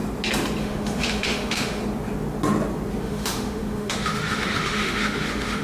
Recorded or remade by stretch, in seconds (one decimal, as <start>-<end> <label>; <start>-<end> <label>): 0.0-0.6 recorded; 0.6-1.8 remade; 1.8-3.0 recorded; 3.0-5.6 remade

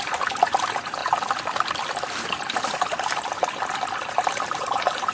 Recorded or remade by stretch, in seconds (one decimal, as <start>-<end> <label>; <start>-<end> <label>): 0.0-1.0 remade; 1.0-4.1 recorded; 4.1-5.1 remade

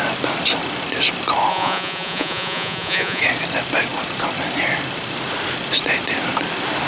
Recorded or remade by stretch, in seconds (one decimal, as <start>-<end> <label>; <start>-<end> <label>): 0.0-1.5 recorded; 1.5-3.2 remade; 3.2-6.9 recorded

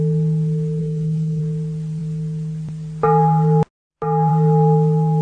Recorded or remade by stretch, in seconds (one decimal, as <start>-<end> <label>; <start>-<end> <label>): 0.0-0.8 recorded; 0.8-1.4 remade; 1.4-5.2 recorded